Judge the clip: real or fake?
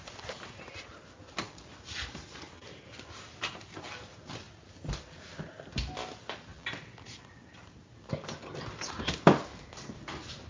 real